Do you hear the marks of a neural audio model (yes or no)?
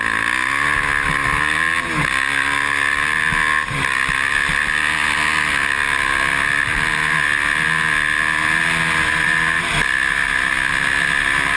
no